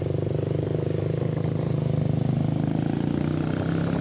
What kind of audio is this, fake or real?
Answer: real